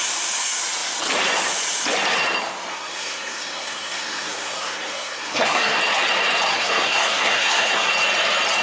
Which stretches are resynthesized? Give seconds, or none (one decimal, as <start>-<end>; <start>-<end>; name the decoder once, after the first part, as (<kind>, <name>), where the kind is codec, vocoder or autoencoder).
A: 2.7-5.8 (codec, SNAC); 6.5-7.9